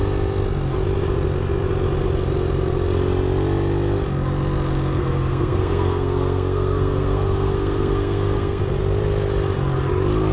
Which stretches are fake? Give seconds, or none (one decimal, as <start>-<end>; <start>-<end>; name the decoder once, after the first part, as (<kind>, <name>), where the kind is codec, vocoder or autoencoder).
5.0-8.6 (codec, SNAC)